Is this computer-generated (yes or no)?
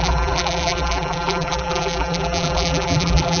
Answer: yes